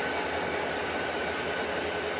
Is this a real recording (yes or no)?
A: yes